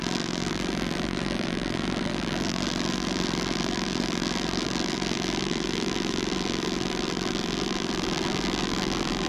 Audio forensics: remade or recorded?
remade